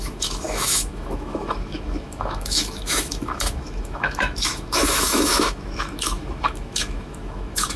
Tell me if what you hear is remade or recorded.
remade